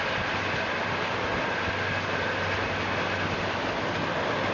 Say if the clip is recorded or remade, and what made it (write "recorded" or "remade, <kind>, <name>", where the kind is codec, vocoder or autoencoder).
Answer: recorded